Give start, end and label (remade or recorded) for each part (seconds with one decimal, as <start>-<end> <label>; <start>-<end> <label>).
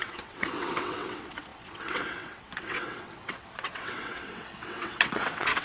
0.0-5.6 remade